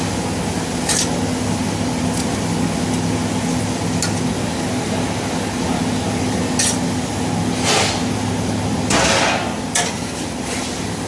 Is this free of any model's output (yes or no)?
yes